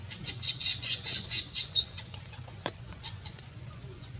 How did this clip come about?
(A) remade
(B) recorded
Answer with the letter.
A